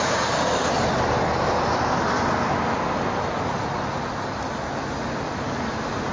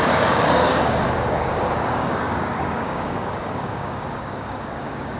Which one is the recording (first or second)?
first